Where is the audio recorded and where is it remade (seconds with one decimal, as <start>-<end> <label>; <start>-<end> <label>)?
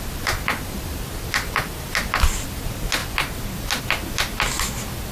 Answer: 0.0-5.1 recorded